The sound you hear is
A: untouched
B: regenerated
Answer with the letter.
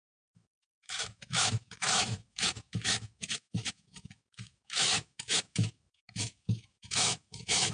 B